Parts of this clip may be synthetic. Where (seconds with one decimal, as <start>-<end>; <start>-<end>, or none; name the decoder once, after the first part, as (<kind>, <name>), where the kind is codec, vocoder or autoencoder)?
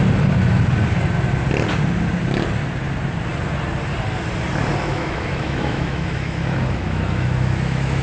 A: 4.8-8.0 (autoencoder, DAC-VAE)